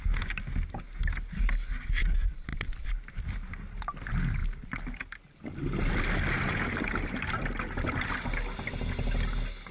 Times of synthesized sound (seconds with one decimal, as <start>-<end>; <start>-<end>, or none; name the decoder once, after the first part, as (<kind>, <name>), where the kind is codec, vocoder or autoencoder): none